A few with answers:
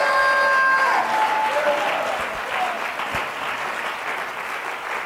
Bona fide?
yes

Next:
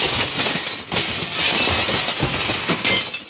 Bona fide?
yes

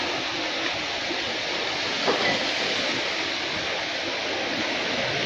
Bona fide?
yes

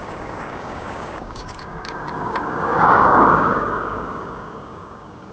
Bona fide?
no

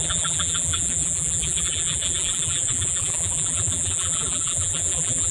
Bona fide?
no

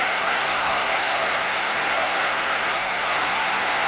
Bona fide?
no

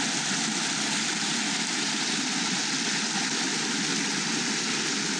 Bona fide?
yes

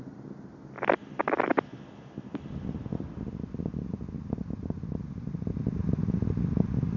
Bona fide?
yes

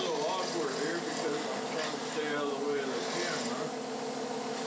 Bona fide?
yes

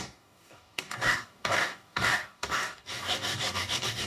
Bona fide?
no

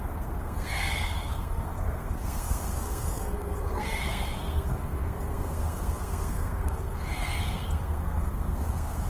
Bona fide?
no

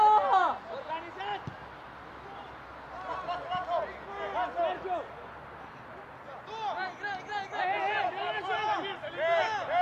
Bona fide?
yes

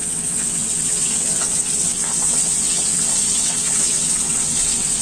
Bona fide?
no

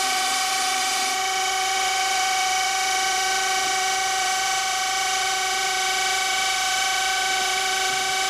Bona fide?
no